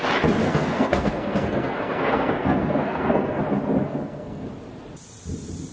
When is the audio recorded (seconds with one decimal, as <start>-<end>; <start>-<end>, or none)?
0.0-0.4; 3.4-3.8; 4.5-5.7